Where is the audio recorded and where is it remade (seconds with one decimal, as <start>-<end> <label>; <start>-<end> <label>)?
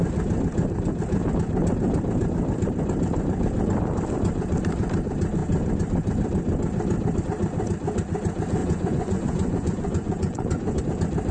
0.0-8.6 recorded; 8.6-10.8 remade; 10.8-11.3 recorded